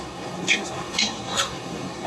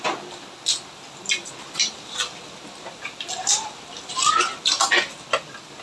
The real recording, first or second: second